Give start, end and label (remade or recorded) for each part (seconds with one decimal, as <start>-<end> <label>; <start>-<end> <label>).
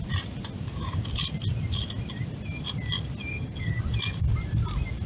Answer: 0.0-3.3 recorded; 3.3-3.8 remade; 3.8-5.1 recorded